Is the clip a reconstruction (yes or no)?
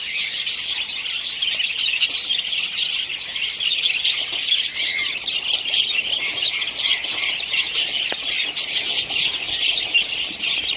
no